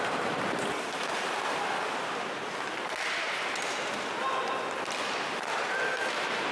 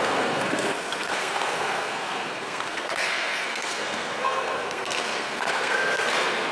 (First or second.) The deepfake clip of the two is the second